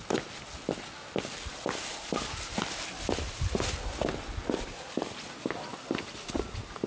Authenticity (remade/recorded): recorded